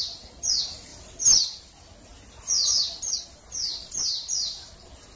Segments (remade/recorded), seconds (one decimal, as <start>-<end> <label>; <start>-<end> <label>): 0.0-0.9 recorded; 0.9-1.6 remade; 1.6-5.2 recorded